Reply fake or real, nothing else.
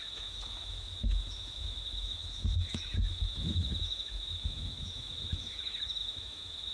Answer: fake